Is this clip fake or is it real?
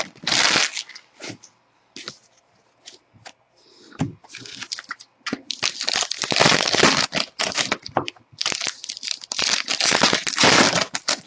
real